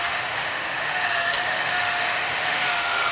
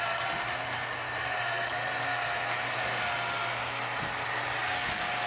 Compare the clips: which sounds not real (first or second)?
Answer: first